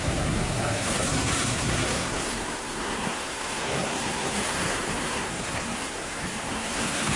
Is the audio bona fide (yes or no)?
no